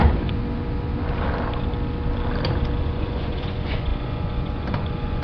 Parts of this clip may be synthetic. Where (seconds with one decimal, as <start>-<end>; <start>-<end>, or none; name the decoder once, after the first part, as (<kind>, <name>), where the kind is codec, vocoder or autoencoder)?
0.0-0.4 (vocoder, Vocos); 2.8-5.2